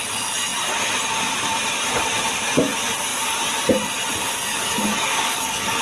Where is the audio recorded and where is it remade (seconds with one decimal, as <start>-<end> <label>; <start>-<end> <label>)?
0.0-4.5 recorded; 4.5-5.8 remade